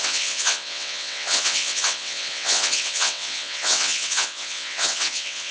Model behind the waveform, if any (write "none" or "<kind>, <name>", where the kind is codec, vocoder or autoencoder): vocoder, WaveNeXt